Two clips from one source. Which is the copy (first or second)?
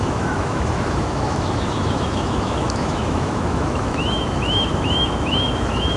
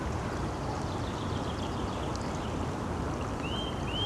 first